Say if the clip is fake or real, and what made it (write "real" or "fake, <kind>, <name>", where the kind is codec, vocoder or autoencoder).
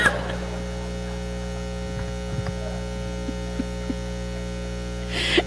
real